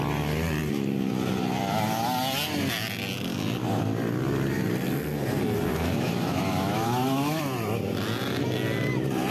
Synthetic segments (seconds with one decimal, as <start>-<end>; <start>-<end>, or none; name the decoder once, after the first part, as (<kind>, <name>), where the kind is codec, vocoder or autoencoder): 5.7-7.4 (autoencoder, DAC-VAE)